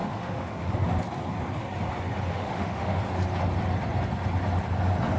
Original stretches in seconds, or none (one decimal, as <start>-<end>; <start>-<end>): 0.7-2.3; 3.0-5.2